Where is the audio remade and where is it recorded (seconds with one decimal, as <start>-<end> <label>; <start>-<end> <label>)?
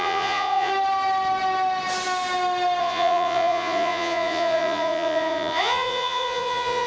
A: 0.0-0.7 remade; 0.7-2.8 recorded; 2.8-6.9 remade